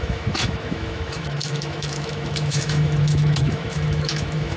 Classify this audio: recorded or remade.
remade